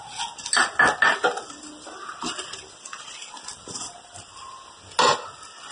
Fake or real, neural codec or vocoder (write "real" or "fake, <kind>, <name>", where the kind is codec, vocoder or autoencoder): real